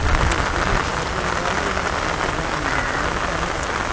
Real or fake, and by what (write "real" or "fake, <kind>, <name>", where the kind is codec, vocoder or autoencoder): real